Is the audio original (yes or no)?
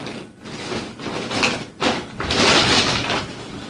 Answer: yes